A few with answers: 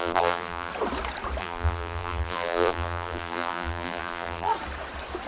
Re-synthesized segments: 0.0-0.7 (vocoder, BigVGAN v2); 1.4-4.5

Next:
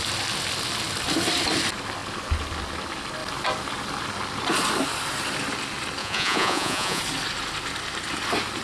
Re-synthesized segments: 6.0-7.0 (vocoder, Vocos)

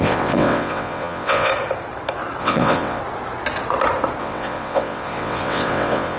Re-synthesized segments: 0.0-1.5 (vocoder, WaveNeXt); 2.4-3.0; 4.2-6.2